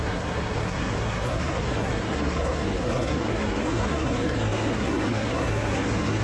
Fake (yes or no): yes